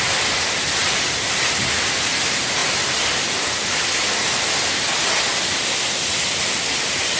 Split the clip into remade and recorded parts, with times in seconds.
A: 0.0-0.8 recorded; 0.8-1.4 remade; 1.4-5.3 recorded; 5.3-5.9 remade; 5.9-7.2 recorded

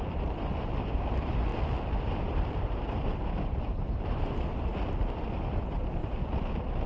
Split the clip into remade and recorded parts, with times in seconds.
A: 0.0-1.5 remade; 1.5-2.1 recorded; 2.1-4.7 remade; 4.7-5.5 recorded; 5.5-6.0 remade; 6.0-6.9 recorded

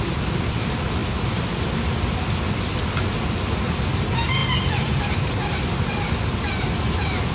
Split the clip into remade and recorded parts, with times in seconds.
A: 0.0-4.4 recorded; 4.4-5.1 remade; 5.1-7.3 recorded

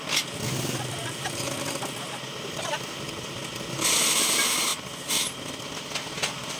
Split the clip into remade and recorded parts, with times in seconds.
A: 0.0-6.6 recorded